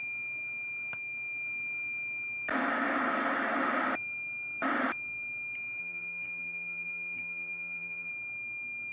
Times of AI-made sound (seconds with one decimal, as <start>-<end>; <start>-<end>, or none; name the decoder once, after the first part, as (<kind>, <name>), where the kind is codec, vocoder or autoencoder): 5.8-8.1 (vocoder, BigVGAN v2)